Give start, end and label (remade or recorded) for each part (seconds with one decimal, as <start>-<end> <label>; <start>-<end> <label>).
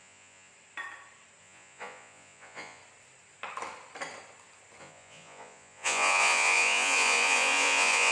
0.0-0.5 remade; 0.5-1.4 recorded; 1.4-2.8 remade; 2.8-4.8 recorded; 4.8-8.1 remade